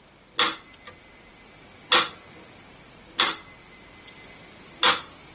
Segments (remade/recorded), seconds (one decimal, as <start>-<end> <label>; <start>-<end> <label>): 0.0-5.3 recorded